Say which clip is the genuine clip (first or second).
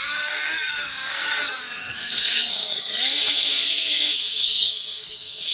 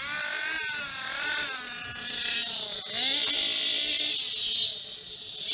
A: second